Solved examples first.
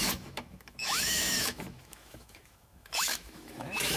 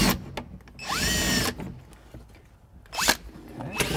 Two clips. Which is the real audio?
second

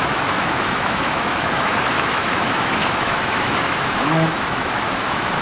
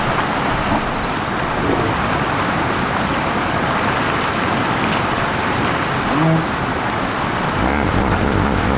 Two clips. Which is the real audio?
second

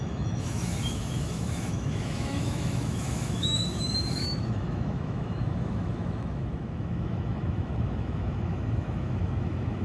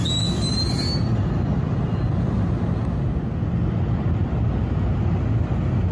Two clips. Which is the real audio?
second